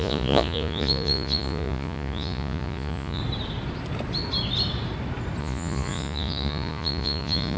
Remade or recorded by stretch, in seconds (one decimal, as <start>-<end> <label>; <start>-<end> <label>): 0.0-3.2 remade; 3.2-5.4 recorded; 5.4-7.6 remade